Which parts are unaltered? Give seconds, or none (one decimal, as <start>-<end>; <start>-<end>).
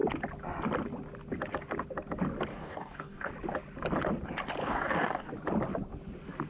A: 0.0-2.5; 3.3-4.6; 5.3-6.5